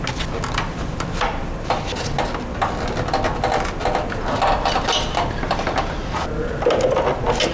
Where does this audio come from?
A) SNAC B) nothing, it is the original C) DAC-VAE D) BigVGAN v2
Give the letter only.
B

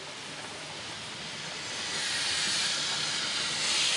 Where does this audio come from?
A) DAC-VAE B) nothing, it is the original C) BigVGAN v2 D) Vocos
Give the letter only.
B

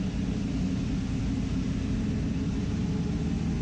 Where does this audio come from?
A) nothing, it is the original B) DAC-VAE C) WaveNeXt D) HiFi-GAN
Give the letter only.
A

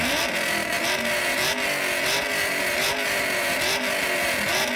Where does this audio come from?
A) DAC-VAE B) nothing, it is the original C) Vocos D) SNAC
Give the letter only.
B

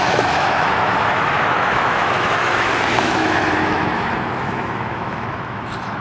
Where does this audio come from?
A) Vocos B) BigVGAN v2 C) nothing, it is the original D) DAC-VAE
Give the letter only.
D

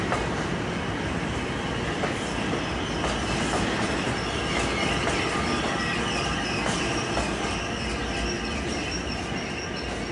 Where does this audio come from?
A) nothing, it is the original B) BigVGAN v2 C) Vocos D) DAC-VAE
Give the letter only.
A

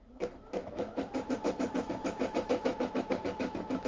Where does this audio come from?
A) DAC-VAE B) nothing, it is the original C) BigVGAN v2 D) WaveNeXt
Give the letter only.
A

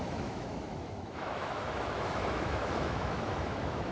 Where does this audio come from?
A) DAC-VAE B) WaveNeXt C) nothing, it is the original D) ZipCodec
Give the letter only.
A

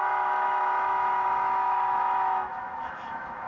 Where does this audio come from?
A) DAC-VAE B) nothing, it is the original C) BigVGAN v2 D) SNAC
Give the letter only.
A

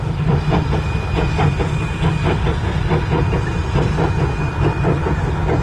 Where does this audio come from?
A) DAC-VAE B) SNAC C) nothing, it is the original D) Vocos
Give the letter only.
C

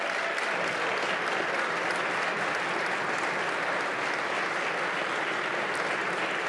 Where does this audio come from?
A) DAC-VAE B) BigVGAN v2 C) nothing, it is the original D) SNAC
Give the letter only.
C